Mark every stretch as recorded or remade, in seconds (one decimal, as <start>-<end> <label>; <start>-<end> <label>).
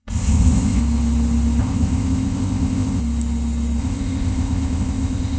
0.0-0.8 remade; 0.8-1.6 recorded; 1.6-3.0 remade; 3.0-3.8 recorded; 3.8-5.4 remade